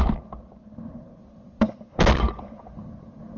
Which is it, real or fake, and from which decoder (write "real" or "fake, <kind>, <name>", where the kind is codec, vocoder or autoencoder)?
real